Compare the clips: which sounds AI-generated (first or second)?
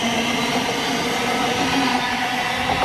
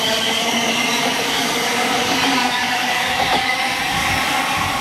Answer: second